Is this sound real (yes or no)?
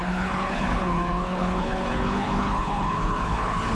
no